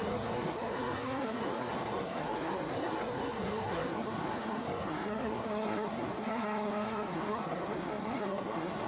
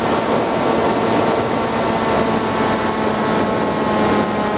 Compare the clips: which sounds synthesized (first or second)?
first